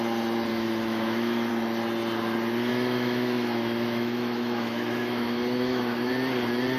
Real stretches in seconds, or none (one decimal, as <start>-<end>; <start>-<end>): 0.0-0.5; 1.5-2.7; 6.1-6.8